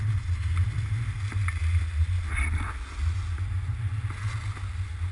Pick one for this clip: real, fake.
real